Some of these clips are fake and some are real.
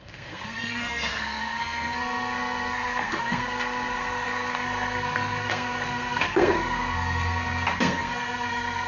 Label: fake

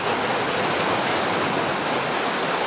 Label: real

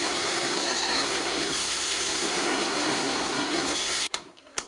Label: fake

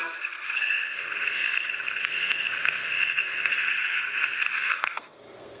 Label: fake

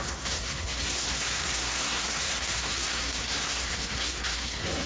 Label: fake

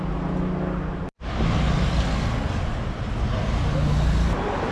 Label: real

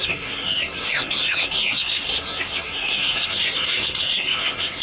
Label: fake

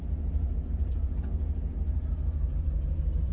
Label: real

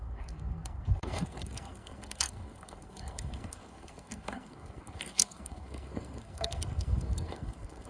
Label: fake